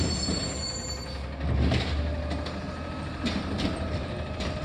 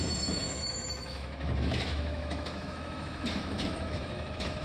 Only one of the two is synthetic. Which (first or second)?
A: second